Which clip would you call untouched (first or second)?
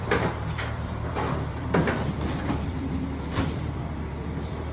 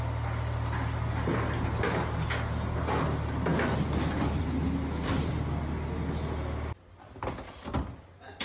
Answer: second